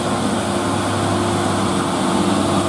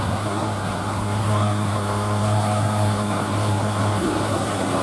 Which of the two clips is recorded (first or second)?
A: first